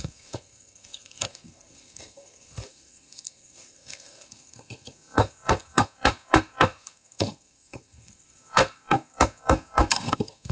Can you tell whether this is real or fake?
fake